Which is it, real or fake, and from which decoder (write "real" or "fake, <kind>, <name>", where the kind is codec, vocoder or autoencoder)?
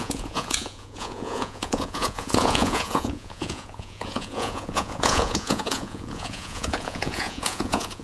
fake, vocoder, Vocos